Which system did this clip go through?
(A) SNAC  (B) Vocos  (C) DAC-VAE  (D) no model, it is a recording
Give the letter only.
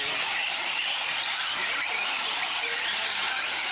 D